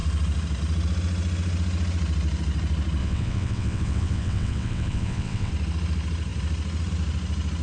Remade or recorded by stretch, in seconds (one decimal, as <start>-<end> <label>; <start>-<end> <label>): 0.0-3.0 recorded; 3.0-5.5 remade; 5.5-7.6 recorded